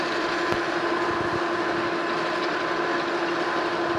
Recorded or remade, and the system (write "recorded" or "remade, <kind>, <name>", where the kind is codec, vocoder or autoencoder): recorded